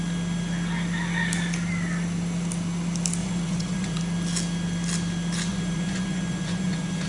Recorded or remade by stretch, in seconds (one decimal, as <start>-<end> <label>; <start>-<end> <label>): 0.0-3.2 recorded; 3.2-4.0 remade; 4.0-5.5 recorded; 5.5-7.1 remade